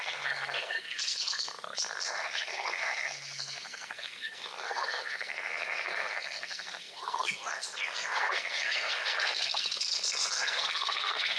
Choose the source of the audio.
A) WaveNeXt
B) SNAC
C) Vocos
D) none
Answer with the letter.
B